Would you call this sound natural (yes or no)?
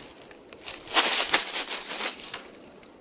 yes